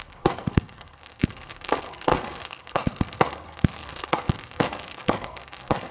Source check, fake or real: fake